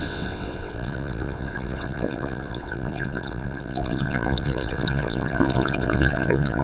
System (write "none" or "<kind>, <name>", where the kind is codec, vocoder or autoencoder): vocoder, WaveNeXt